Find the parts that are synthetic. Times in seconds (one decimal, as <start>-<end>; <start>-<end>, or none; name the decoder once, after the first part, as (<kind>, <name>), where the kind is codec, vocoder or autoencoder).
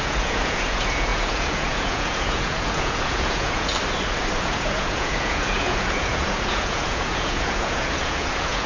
0.0-3.7 (vocoder, Vocos); 4.4-8.7